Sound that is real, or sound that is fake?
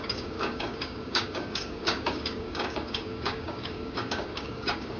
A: fake